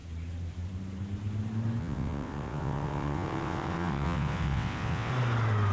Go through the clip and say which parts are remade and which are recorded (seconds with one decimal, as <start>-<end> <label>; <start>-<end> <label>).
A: 0.0-1.8 recorded; 1.8-5.1 remade; 5.1-5.7 recorded